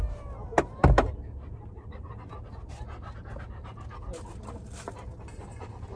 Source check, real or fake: real